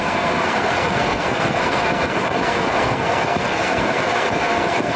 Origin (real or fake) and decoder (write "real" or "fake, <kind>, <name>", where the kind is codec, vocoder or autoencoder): fake, codec, SNAC